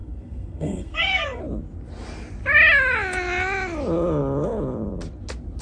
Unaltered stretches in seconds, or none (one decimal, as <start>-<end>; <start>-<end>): 1.4-5.6